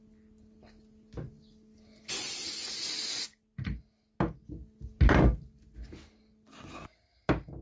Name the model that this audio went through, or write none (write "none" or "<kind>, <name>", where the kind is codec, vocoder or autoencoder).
none